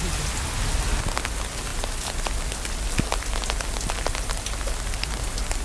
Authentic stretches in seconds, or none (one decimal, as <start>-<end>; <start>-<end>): 0.0-5.6